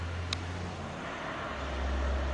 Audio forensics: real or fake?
real